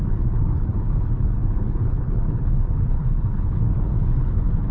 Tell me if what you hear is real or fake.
fake